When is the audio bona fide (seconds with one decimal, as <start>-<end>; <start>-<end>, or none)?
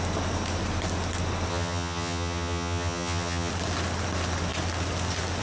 0.0-1.5; 3.5-5.4